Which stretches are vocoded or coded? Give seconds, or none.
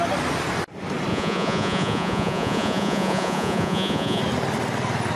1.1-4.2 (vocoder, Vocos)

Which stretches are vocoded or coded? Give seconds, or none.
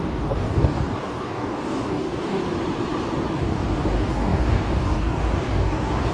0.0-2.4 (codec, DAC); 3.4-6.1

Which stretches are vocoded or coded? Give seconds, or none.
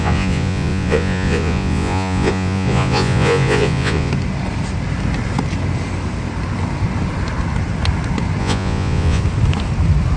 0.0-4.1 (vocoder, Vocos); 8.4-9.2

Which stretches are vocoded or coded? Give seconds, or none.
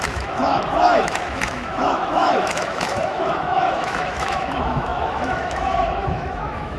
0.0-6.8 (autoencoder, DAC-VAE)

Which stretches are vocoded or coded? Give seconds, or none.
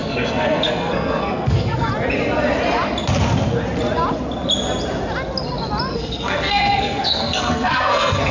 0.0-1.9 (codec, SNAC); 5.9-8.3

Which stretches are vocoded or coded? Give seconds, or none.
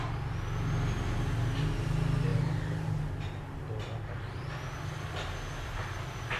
none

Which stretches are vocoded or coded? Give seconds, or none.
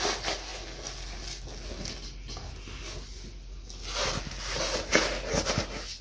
none